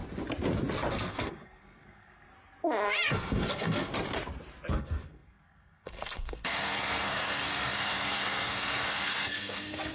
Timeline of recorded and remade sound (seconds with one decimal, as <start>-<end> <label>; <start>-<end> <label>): 0.0-0.9 recorded; 0.9-2.3 remade; 2.3-3.1 recorded; 3.1-3.9 remade; 3.9-4.7 recorded; 4.7-9.9 remade